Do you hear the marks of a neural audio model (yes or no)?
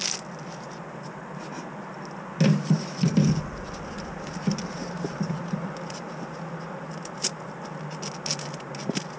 no